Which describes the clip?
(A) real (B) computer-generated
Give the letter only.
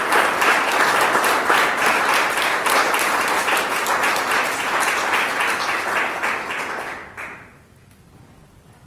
A